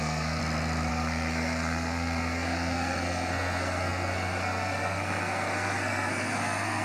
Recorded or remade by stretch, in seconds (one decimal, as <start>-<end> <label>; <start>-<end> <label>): 0.0-0.4 remade; 0.4-0.9 recorded; 0.9-6.8 remade